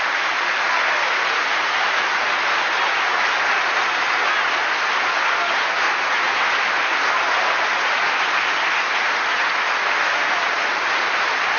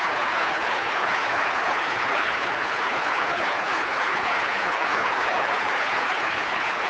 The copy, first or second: second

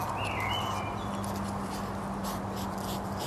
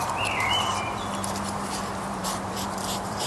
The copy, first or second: second